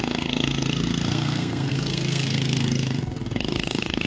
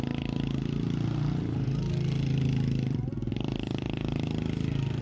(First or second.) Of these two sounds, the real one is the second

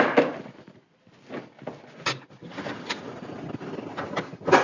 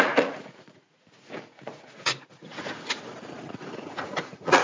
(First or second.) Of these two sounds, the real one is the first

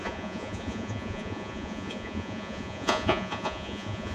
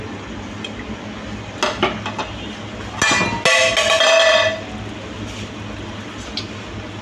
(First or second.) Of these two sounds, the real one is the second